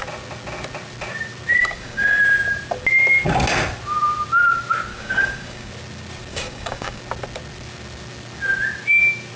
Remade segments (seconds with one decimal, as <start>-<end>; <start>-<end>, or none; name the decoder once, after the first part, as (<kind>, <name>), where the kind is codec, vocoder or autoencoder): 1.6-2.2 (codec, DAC); 4.9-5.7; 6.3-7.0